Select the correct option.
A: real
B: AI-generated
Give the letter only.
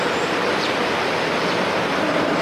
A